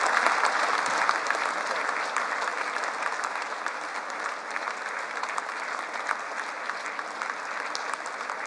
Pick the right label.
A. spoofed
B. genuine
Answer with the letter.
B